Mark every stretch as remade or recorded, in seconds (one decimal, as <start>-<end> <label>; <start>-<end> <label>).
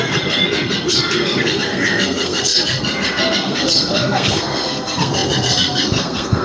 0.0-6.4 remade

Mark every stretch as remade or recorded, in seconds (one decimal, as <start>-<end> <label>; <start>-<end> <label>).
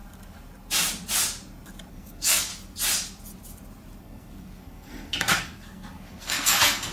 0.0-1.9 recorded; 1.9-2.5 remade; 2.5-4.0 recorded; 4.0-6.9 remade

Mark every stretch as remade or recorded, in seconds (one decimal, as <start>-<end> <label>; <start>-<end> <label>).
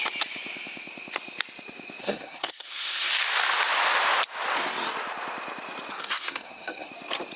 0.0-2.0 recorded; 2.0-3.1 remade; 3.1-5.9 recorded; 5.9-6.9 remade; 6.9-7.4 recorded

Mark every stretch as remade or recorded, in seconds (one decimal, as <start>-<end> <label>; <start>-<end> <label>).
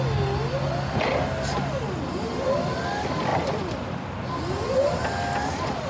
0.0-5.9 recorded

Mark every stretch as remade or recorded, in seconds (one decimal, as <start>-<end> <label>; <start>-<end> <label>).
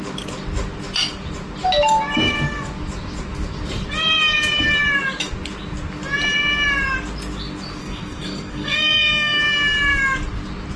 0.0-7.8 recorded; 7.8-9.4 remade; 9.4-10.8 recorded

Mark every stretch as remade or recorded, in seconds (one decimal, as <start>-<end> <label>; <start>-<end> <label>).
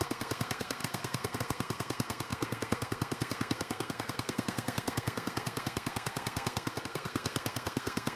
0.0-8.2 remade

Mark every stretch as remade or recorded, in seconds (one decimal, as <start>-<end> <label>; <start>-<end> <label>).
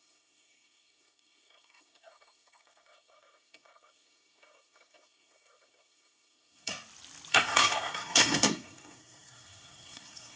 0.0-6.7 remade; 6.7-7.3 recorded; 7.3-10.4 remade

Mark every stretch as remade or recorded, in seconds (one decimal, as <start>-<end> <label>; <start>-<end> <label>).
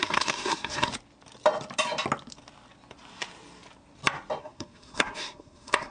0.0-0.9 remade; 0.9-4.4 recorded; 4.4-5.9 remade